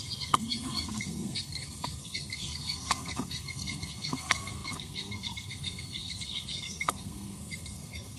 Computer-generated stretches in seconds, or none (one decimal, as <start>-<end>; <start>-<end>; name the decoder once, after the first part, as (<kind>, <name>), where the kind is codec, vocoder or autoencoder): 0.0-8.2 (codec, SNAC)